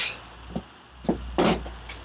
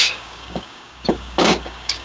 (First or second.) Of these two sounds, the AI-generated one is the second